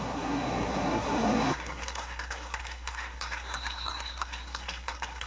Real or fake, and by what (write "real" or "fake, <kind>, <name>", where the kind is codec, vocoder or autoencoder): fake, codec, SNAC